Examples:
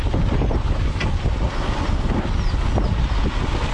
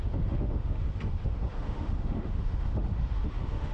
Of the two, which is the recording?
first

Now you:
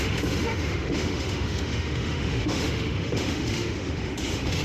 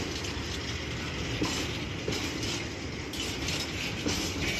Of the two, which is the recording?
second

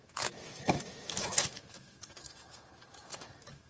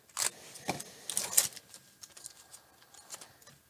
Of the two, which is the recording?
second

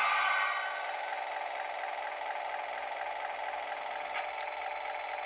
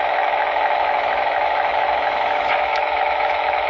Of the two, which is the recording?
first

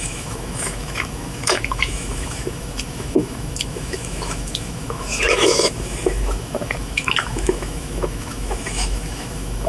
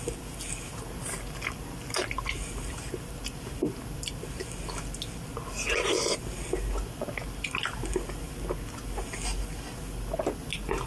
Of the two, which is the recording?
second